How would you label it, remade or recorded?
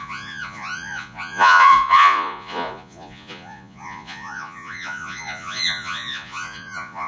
remade